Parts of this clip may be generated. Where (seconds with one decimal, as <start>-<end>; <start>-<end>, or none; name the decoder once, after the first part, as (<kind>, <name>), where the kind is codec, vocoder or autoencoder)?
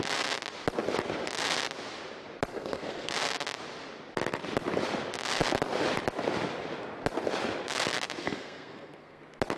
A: 2.5-3.1 (codec, SNAC); 8.2-9.2